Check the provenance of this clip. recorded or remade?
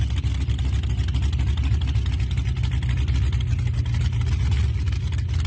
recorded